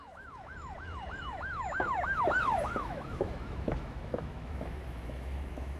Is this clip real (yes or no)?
no